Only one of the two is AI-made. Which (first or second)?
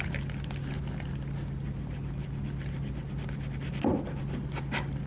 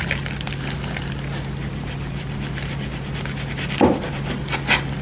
first